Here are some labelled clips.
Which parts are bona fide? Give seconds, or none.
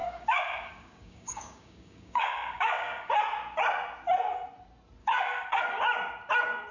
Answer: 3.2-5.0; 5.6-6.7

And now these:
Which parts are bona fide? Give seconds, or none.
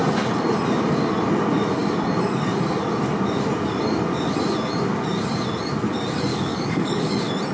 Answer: 0.0-6.3; 7.1-7.5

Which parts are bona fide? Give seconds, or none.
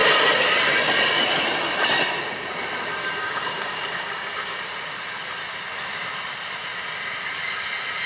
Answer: 0.0-3.0; 4.6-8.1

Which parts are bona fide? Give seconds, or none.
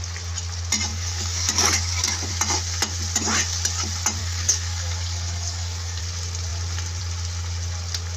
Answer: 0.0-0.9; 2.3-4.2; 6.0-8.2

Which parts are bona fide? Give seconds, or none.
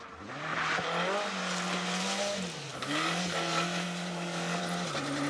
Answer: 0.0-2.7; 4.6-5.3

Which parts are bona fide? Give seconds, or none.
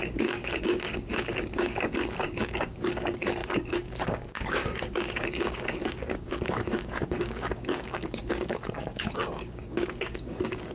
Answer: none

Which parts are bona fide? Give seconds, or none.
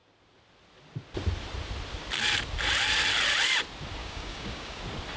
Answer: 0.0-4.0; 4.8-5.2